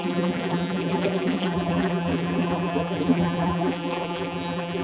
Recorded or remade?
remade